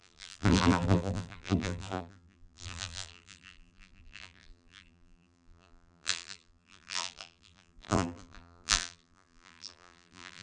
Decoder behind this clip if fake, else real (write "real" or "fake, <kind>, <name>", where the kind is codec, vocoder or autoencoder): fake, vocoder, BigVGAN v2